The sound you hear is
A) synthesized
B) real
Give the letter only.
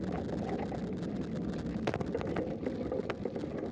B